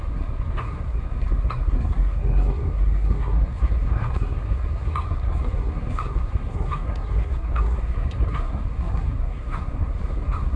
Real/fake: fake